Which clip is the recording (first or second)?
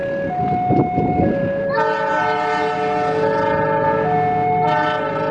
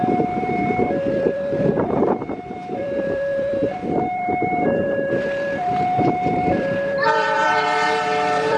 first